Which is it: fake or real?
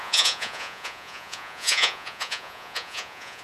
fake